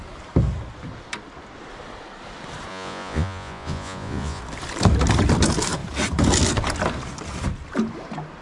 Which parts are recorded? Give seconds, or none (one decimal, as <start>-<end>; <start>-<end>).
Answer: 0.0-2.7; 4.4-8.4